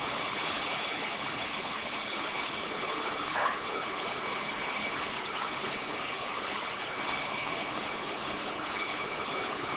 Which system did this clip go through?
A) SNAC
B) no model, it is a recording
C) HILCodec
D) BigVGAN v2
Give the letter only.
C